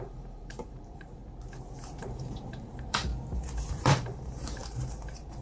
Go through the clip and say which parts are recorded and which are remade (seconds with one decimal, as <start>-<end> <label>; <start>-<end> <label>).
0.0-1.2 remade; 1.2-2.0 recorded; 2.0-3.1 remade; 3.1-3.7 recorded; 3.7-5.4 remade